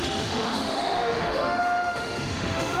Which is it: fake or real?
fake